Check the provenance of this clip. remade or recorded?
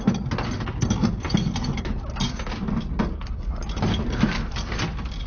recorded